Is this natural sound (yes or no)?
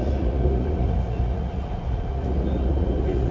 no